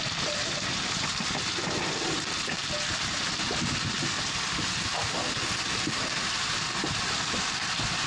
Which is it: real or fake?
real